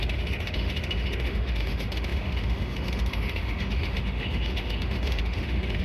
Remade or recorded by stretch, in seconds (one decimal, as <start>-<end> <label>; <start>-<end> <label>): 0.0-5.8 remade